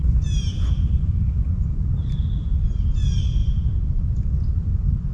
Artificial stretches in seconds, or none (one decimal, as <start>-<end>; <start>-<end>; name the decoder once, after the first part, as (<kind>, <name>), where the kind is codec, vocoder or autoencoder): none